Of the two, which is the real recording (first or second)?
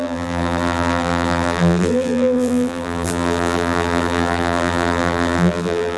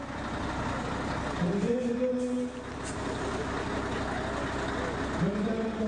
second